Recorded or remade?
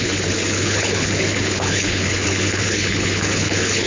remade